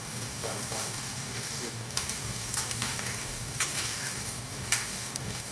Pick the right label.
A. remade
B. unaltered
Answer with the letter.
A